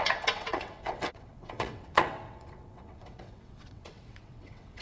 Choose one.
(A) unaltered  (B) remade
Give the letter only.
B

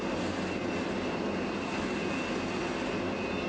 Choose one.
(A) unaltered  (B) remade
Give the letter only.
A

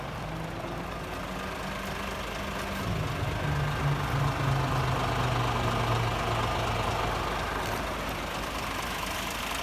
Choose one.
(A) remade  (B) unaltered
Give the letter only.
B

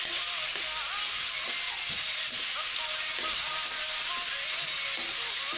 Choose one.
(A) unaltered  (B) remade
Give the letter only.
A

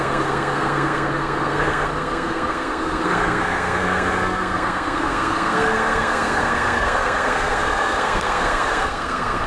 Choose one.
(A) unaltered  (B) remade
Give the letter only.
B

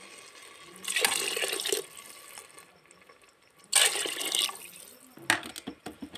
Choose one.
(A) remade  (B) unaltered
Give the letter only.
B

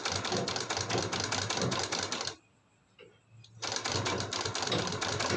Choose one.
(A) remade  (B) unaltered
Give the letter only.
B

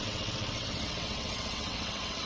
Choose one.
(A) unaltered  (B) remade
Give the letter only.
B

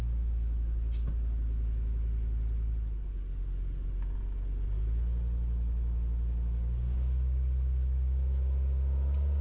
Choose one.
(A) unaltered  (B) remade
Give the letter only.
A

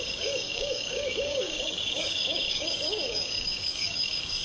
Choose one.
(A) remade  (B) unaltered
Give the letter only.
A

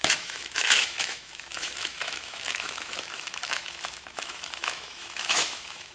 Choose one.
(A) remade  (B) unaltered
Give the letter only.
A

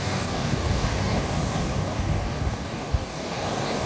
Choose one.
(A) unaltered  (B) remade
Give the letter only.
B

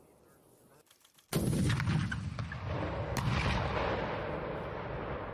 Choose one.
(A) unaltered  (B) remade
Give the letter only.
A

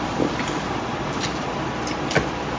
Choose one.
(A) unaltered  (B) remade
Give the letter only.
A